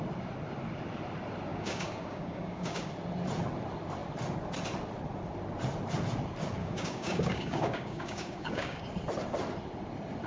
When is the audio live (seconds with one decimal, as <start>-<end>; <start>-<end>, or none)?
0.0-1.5; 2.9-6.6; 8.8-10.3